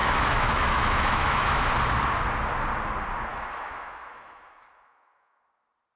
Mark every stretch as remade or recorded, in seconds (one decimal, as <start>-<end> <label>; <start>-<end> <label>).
0.0-1.7 remade; 1.7-3.3 recorded; 3.3-5.4 remade; 5.4-6.0 recorded